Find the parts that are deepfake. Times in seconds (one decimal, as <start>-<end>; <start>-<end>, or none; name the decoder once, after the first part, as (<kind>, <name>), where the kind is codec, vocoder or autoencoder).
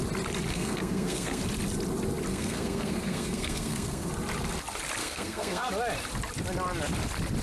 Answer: 0.5-1.4 (codec, SNAC); 2.3-4.1; 5.0-5.7